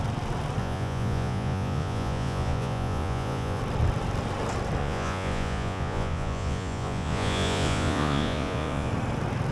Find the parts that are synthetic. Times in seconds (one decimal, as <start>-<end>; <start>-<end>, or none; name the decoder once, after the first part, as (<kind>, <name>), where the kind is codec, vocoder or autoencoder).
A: 0.6-3.6 (vocoder, Vocos); 4.8-8.9